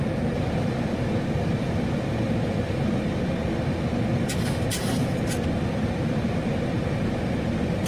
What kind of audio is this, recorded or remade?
recorded